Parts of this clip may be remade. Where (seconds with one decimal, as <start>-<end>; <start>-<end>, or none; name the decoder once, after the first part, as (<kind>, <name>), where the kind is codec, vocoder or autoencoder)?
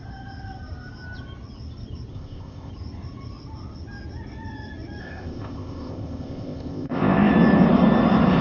2.1-2.7 (codec, ZipCodec); 5.0-7.3